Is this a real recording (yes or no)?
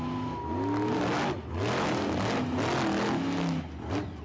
yes